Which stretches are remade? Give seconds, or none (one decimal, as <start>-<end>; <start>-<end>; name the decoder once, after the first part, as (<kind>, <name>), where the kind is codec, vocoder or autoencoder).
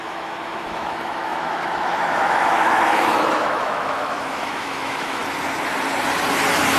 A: 0.0-5.2 (autoencoder, DAC-VAE)